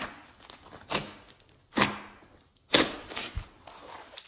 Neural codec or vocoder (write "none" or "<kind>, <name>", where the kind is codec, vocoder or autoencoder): none